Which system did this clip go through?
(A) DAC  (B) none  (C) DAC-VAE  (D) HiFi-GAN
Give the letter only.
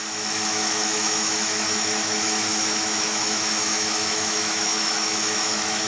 C